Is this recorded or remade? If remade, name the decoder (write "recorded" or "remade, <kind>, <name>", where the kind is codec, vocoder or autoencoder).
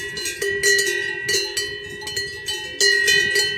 recorded